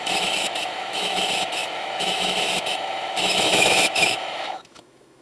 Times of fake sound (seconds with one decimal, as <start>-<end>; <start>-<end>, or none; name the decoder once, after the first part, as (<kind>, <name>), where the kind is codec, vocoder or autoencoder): 0.0-5.2 (autoencoder, DAC-VAE)